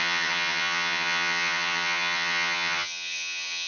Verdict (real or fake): fake